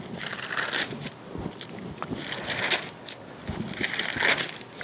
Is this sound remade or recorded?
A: recorded